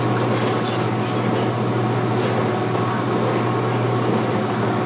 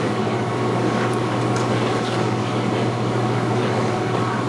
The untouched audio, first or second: first